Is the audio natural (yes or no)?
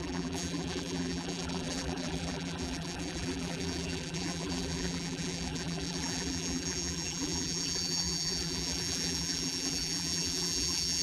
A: no